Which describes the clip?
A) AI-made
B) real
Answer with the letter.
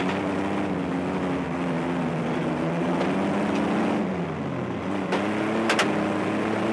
B